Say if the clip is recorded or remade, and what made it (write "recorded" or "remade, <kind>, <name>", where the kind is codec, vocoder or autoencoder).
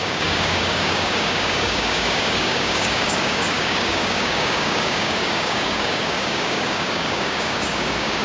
remade, codec, DAC